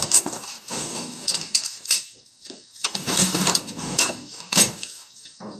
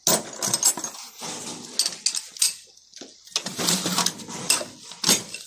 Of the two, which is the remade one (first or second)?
first